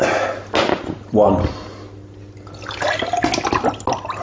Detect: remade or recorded recorded